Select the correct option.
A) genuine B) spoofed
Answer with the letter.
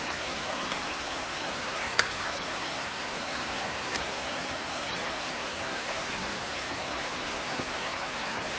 B